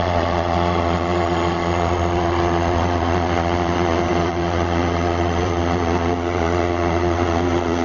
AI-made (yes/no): yes